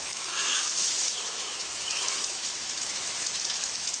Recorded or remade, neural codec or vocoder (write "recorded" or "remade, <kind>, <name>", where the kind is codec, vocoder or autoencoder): remade, autoencoder, DAC-VAE